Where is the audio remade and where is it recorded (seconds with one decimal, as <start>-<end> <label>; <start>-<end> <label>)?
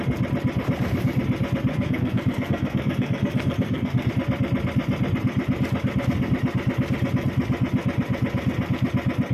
0.0-1.7 recorded; 1.7-4.1 remade; 4.1-9.3 recorded